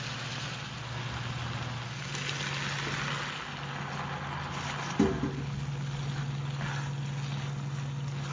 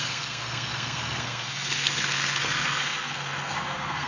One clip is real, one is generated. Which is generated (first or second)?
second